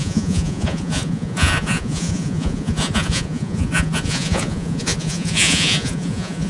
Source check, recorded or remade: remade